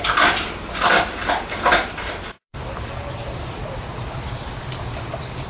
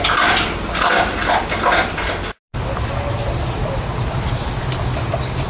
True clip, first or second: second